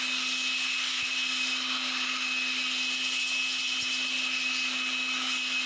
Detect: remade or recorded recorded